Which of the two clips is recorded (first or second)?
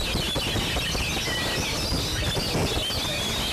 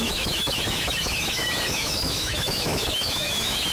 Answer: first